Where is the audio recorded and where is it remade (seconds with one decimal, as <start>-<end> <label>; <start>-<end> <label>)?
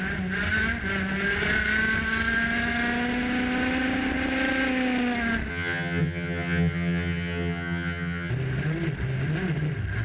0.0-5.5 recorded; 5.5-8.3 remade; 8.3-10.0 recorded